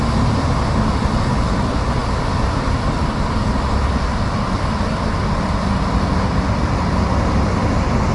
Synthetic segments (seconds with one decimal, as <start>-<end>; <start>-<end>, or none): none